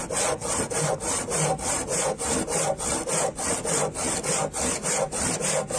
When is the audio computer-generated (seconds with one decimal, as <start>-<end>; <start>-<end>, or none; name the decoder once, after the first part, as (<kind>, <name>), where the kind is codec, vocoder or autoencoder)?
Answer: none